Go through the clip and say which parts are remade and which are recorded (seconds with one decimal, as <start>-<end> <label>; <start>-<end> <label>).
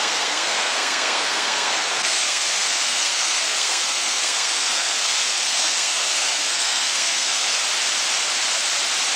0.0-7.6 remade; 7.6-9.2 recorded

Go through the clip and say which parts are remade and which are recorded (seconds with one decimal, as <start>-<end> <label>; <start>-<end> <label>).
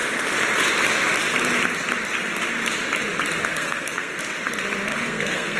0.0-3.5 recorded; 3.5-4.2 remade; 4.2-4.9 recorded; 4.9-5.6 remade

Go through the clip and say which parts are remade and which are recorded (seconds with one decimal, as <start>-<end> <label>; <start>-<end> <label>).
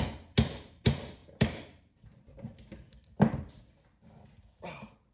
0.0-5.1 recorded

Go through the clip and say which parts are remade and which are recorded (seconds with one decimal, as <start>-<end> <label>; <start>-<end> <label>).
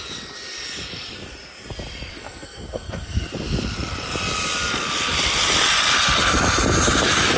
0.0-2.1 recorded; 2.1-3.3 remade; 3.3-7.4 recorded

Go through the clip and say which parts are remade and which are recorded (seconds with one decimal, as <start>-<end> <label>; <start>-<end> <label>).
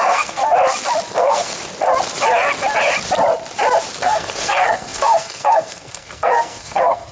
0.0-0.4 remade; 0.4-1.1 recorded; 1.1-1.5 remade; 1.5-3.9 recorded; 3.9-7.1 remade